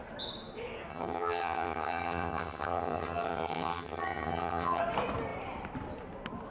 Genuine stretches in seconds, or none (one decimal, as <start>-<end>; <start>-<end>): 0.0-0.9; 4.8-6.5